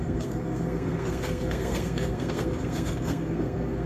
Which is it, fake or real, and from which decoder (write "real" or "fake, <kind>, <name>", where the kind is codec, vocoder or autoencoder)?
fake, codec, SNAC